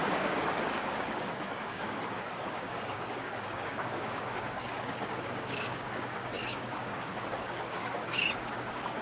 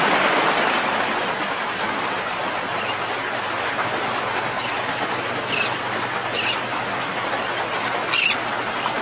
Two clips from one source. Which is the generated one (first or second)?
first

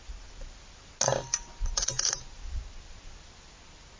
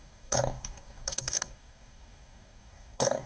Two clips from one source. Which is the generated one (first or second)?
second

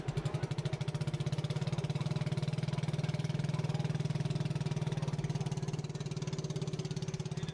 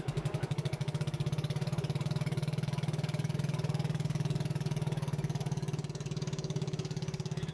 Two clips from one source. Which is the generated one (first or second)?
second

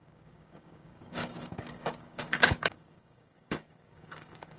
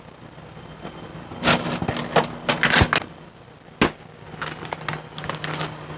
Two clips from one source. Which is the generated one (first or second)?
first